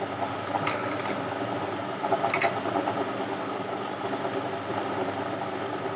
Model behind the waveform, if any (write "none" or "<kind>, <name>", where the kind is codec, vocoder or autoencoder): none